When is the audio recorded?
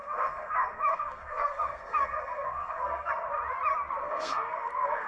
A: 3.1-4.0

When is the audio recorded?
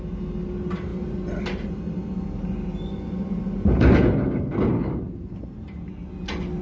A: 0.0-6.6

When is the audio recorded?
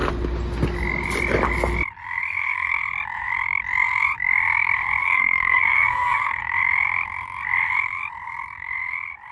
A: 0.0-2.2; 2.8-5.0; 6.4-9.3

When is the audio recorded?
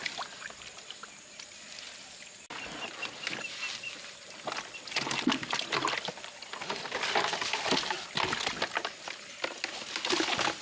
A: 0.0-10.6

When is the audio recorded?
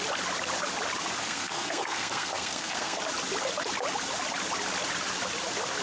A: 0.0-1.2; 3.0-5.8